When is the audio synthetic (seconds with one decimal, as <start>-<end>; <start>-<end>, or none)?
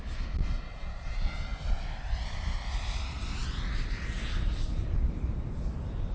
none